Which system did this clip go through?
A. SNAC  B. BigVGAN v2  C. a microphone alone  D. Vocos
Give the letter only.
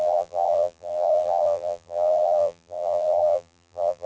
B